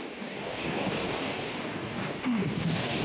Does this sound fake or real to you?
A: fake